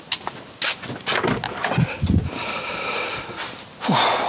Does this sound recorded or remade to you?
recorded